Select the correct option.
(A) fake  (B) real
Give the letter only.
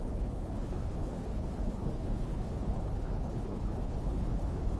A